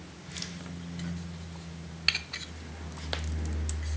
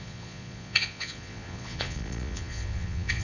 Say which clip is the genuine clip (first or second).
first